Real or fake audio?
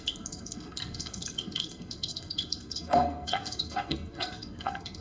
fake